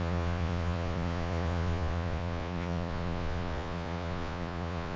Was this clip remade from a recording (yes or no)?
yes